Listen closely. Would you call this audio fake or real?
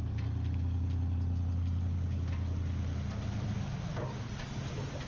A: real